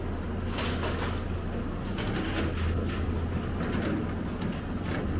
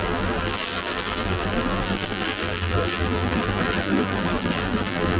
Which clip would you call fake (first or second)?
second